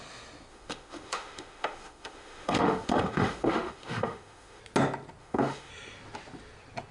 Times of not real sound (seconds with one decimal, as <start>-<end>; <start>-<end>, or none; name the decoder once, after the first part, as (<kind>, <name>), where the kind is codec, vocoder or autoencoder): 0.5-4.6 (autoencoder, DAC-VAE); 5.2-5.7